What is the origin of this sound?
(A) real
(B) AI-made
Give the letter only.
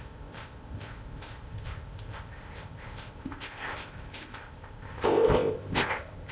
B